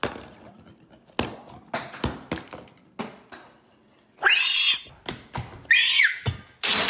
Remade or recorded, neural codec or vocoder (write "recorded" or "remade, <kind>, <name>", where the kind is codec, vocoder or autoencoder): recorded